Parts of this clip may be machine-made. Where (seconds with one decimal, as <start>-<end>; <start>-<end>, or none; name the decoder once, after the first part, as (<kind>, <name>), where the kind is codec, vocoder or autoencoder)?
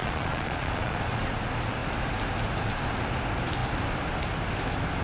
0.0-1.0 (vocoder, Vocos)